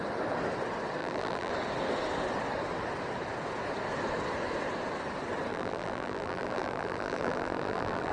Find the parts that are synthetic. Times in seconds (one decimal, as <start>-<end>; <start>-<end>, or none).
1.0-1.5; 5.5-8.1